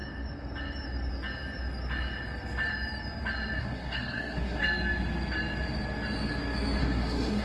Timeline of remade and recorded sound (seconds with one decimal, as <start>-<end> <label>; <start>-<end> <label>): 0.0-3.6 recorded; 3.6-4.6 remade; 4.6-6.8 recorded; 6.8-7.4 remade